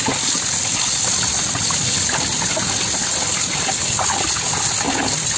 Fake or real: real